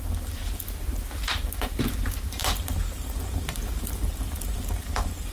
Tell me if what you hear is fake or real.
fake